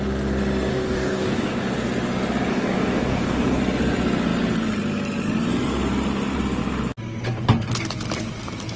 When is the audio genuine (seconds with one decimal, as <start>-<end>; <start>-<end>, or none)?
0.0-0.7; 1.6-2.5; 3.6-8.8